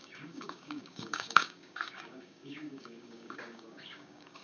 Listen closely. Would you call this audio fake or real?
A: fake